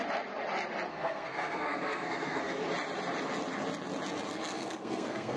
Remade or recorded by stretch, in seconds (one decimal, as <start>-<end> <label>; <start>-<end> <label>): 0.0-0.9 recorded; 0.9-2.6 remade; 2.6-4.3 recorded; 4.3-5.4 remade